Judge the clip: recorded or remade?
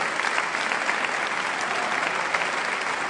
recorded